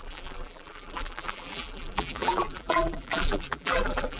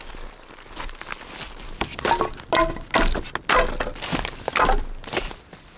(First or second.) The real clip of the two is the second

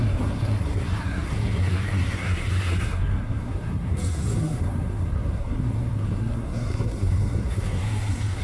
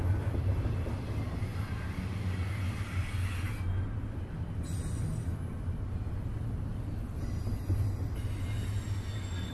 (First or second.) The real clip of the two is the second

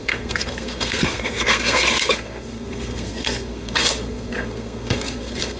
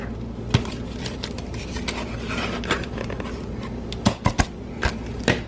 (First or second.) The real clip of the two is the second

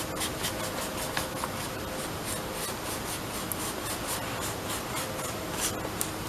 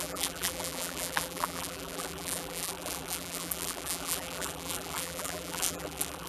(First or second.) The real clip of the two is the first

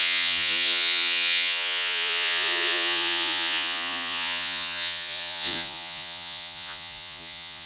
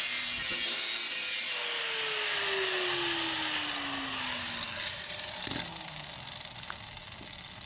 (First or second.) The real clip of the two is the second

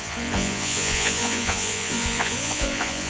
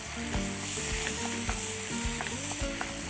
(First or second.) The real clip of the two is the second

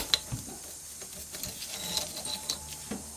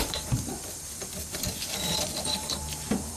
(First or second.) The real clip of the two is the first